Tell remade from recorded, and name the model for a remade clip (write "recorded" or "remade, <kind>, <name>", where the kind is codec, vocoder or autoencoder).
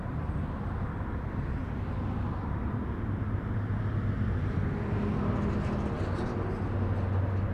recorded